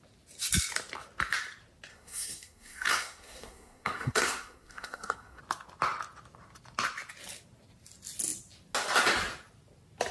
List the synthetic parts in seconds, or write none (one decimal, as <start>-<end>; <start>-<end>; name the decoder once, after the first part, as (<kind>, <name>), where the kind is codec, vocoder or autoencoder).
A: 1.9-5.4 (codec, SNAC)